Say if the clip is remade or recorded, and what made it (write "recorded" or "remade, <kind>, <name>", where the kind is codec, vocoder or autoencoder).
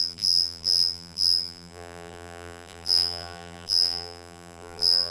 remade, vocoder, BigVGAN v2